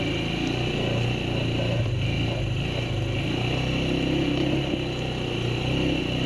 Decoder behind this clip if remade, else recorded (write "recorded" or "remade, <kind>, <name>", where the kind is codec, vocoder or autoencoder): recorded